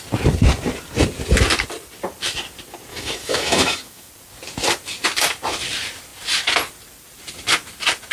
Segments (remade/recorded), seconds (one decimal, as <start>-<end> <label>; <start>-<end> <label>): 0.0-2.9 recorded; 2.9-4.1 remade; 4.1-8.1 recorded

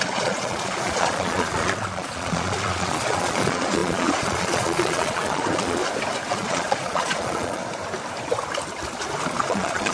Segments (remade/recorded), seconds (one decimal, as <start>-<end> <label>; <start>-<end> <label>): 0.0-5.8 remade; 5.8-6.3 recorded; 6.3-7.6 remade; 7.6-9.4 recorded; 9.4-9.9 remade

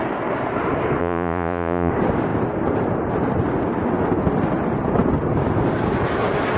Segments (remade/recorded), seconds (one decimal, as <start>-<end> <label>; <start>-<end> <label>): 0.0-1.0 recorded; 1.0-1.9 remade; 1.9-6.6 recorded

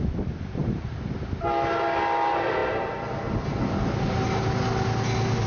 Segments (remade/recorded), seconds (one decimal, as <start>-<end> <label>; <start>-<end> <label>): 0.0-0.6 recorded; 0.6-1.1 remade; 1.1-5.5 recorded

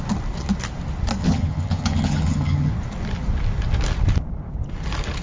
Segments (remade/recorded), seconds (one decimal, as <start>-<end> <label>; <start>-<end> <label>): 0.0-1.2 recorded; 1.2-2.7 remade; 2.7-5.2 recorded